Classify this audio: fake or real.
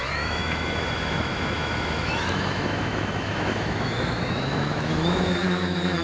fake